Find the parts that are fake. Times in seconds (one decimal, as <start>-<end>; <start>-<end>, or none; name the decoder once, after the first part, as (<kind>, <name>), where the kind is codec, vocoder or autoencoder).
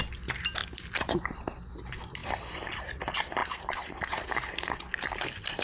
0.6-1.7 (vocoder, BigVGAN v2); 2.2-2.8